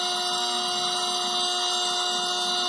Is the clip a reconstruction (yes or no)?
no